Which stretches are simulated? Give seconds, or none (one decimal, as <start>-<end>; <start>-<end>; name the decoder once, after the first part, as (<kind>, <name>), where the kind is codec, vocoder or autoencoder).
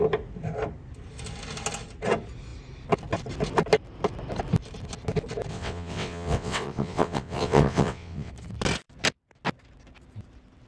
5.5-8.3 (vocoder, WaveNeXt)